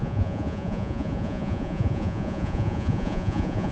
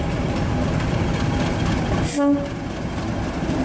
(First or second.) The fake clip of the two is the first